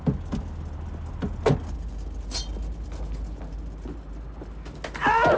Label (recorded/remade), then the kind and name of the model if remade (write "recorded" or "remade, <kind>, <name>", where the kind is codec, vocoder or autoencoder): recorded